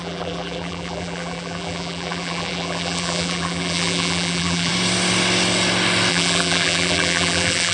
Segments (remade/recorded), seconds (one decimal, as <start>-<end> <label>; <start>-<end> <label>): 0.0-4.7 remade; 4.7-6.1 recorded; 6.1-7.7 remade